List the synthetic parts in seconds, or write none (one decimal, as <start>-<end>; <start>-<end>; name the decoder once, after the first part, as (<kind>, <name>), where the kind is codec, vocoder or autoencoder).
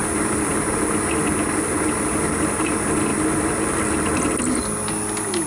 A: none